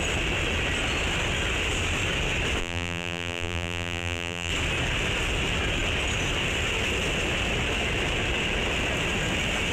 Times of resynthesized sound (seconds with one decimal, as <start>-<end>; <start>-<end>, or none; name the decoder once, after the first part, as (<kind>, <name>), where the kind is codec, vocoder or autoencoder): 2.6-4.5 (vocoder, BigVGAN v2)